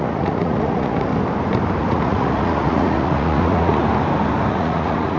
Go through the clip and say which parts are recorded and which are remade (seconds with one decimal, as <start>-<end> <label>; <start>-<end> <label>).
0.0-1.1 remade; 1.1-1.8 recorded; 1.8-3.8 remade; 3.8-4.5 recorded; 4.5-5.2 remade

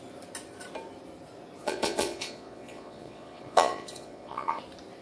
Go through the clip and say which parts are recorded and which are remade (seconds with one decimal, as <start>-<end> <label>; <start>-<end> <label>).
0.0-1.6 recorded; 1.6-4.6 remade; 4.6-5.0 recorded

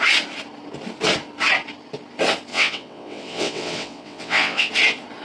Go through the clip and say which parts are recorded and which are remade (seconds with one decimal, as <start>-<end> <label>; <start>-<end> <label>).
0.0-2.5 recorded; 2.5-4.7 remade; 4.7-5.2 recorded

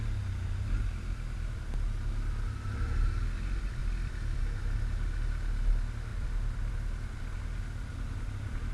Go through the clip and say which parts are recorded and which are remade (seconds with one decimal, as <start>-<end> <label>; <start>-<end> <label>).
0.0-3.8 recorded; 3.8-4.4 remade; 4.4-6.1 recorded; 6.1-6.7 remade; 6.7-8.7 recorded